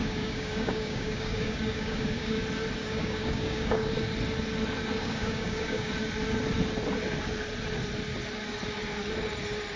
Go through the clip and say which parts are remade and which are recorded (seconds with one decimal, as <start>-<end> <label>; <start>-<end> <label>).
0.0-2.4 remade; 2.4-2.8 recorded; 2.8-3.9 remade; 3.9-5.0 recorded; 5.0-5.9 remade; 5.9-9.8 recorded